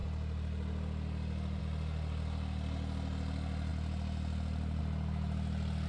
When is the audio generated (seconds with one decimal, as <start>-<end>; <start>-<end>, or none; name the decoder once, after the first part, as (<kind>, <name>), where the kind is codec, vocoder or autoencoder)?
none